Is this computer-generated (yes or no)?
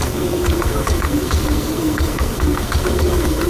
yes